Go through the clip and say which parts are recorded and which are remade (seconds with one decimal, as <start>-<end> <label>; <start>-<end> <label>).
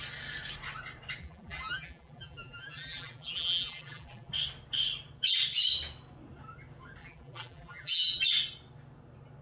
0.0-1.2 recorded; 1.2-4.3 remade; 4.3-7.0 recorded; 7.0-8.2 remade; 8.2-9.4 recorded